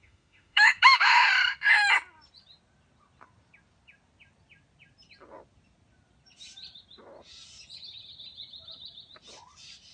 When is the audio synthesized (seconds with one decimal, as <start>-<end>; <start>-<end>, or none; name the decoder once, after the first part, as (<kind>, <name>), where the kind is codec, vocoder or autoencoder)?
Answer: 0.0-1.3 (autoencoder, DAC-VAE)